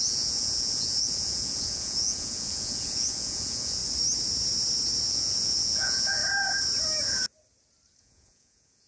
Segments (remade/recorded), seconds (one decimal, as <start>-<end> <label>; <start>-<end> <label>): 0.0-3.8 remade; 3.8-5.1 recorded; 5.1-6.2 remade; 6.2-8.0 recorded; 8.0-8.9 remade